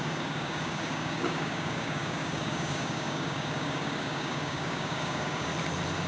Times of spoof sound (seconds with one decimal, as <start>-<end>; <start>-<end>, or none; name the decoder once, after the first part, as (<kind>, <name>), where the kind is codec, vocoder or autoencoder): 0.0-5.5 (codec, DAC)